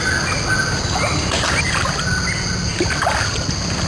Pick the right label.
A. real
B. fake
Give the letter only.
A